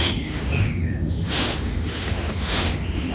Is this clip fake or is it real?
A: fake